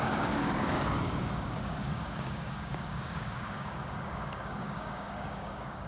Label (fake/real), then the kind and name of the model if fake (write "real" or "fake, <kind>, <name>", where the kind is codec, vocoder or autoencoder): fake, codec, DAC